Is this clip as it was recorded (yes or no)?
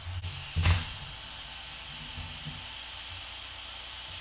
yes